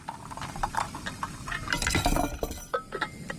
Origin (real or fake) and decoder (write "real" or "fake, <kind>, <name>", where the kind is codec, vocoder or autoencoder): real